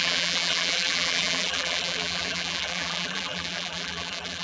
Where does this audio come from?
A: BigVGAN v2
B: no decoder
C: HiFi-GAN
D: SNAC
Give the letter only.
A